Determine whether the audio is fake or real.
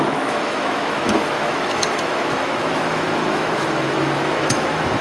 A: fake